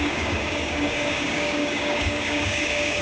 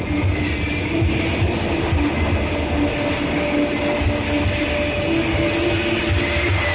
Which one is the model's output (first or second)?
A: first